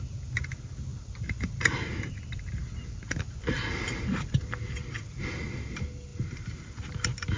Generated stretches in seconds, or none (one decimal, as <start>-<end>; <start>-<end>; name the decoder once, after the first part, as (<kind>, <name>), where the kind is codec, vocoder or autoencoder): none